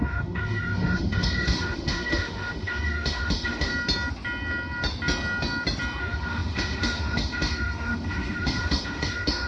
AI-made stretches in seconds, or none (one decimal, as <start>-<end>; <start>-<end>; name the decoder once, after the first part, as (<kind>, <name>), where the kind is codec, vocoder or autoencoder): 0.0-3.7 (autoencoder, DAC-VAE); 6.0-9.5